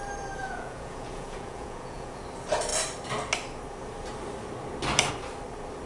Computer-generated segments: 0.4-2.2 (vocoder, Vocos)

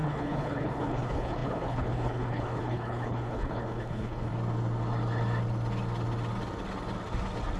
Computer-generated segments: 0.0-4.3 (codec, HILCodec)